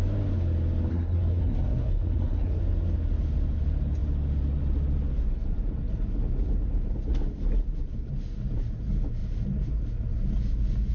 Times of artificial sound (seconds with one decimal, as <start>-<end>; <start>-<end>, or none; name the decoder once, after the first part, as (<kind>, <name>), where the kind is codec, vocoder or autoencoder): 0.9-2.6 (codec, SNAC)